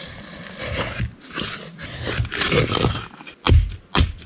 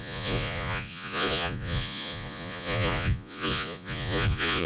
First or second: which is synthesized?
second